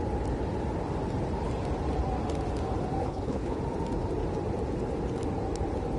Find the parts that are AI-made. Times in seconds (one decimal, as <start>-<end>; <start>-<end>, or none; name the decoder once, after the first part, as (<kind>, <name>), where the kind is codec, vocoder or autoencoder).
3.0-3.6 (codec, HILCodec)